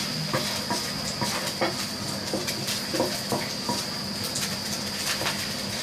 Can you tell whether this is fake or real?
real